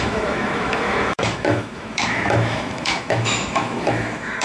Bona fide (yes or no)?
no